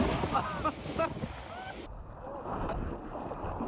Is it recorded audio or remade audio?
recorded